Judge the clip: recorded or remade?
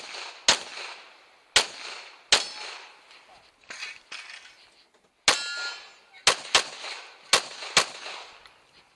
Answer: recorded